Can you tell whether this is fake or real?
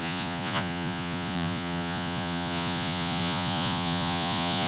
fake